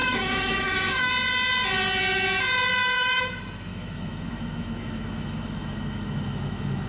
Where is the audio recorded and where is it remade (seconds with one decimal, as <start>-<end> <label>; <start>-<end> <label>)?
0.0-1.1 remade; 1.1-2.8 recorded; 2.8-3.3 remade; 3.3-3.7 recorded; 3.7-6.9 remade